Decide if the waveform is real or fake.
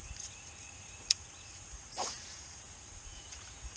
fake